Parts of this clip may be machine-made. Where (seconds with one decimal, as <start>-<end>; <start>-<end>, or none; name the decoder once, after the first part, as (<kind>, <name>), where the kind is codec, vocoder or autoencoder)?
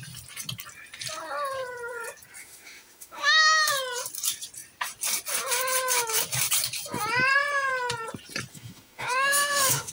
2.4-3.7 (autoencoder, DAC-VAE); 8.5-9.9